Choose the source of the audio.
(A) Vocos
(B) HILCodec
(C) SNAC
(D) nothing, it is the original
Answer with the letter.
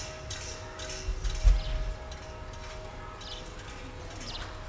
D